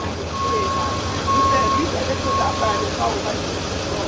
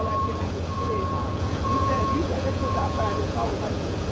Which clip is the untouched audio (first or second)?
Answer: first